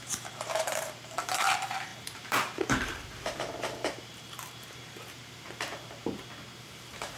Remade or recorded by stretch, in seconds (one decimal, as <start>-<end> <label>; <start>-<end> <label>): 0.0-6.0 remade; 6.0-6.6 recorded; 6.6-7.2 remade